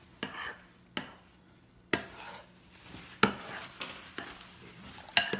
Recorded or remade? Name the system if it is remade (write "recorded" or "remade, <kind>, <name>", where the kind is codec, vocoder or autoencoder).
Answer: recorded